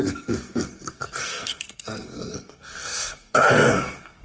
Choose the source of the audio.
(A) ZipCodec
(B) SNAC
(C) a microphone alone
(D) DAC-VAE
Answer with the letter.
B